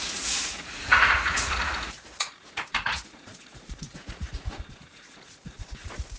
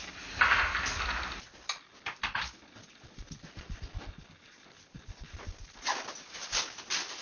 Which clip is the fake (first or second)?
first